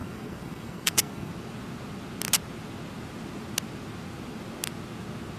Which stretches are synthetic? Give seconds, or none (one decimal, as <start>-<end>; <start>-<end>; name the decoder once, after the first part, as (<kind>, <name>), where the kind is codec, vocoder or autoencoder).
0.0-1.3 (codec, SNAC)